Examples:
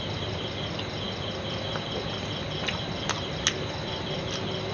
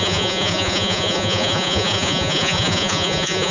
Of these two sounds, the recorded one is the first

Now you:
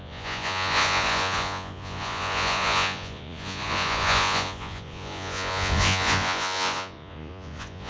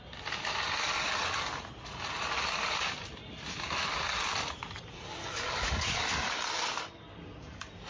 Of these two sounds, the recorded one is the second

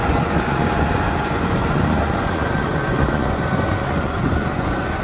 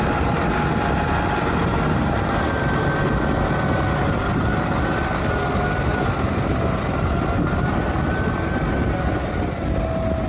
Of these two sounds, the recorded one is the second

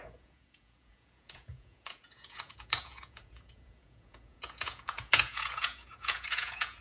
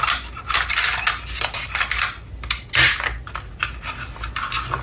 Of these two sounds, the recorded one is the second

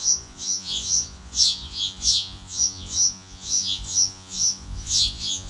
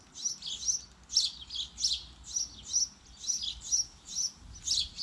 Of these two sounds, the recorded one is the second